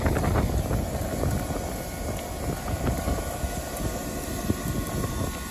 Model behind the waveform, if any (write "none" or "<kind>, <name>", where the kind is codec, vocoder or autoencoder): none